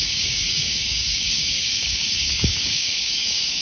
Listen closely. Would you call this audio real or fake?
fake